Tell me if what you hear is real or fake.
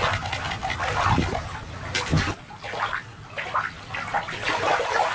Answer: real